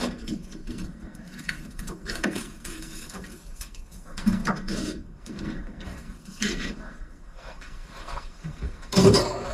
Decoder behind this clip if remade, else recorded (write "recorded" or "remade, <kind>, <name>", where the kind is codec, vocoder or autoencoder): remade, codec, SNAC